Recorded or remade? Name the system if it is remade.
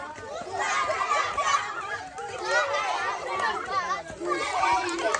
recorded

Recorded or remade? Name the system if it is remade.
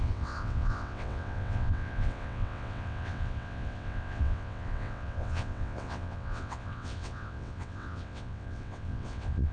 remade, vocoder, WaveNeXt